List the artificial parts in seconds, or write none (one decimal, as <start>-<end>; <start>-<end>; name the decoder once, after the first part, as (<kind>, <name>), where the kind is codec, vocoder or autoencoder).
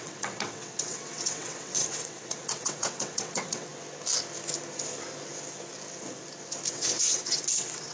0.0-3.7 (vocoder, WaveNeXt); 6.7-7.9